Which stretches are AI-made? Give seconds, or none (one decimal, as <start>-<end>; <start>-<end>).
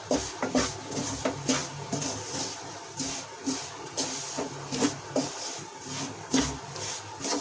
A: none